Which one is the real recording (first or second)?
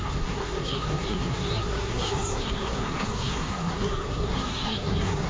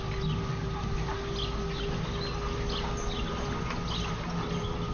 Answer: second